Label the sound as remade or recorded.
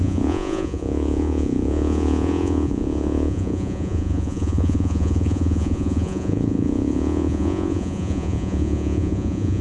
remade